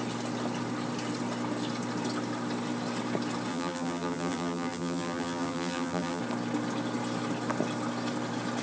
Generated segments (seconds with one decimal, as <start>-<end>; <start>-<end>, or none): 3.5-6.2